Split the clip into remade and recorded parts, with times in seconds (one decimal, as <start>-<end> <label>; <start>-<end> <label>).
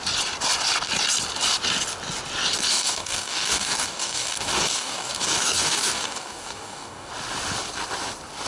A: 0.0-2.7 recorded; 2.7-7.1 remade; 7.1-8.5 recorded